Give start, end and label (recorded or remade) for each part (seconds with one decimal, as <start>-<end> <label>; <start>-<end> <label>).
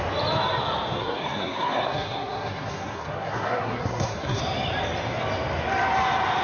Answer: 0.0-1.0 recorded; 1.0-4.4 remade; 4.4-6.4 recorded